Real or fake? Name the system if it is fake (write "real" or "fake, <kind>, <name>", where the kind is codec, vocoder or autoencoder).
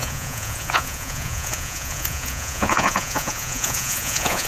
fake, vocoder, Vocos